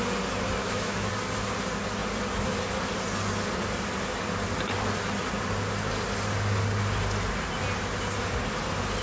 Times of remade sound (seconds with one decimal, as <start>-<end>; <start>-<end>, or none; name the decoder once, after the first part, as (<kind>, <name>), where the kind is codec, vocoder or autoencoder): 0.6-1.1 (autoencoder, DAC-VAE)